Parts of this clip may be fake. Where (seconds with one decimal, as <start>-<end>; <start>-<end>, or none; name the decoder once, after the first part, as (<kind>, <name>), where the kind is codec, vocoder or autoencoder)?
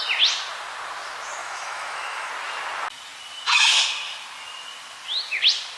1.4-2.3 (autoencoder, DAC-VAE)